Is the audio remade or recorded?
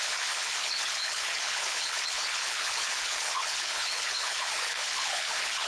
remade